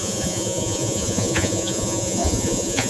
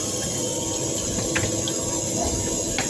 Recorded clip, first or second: second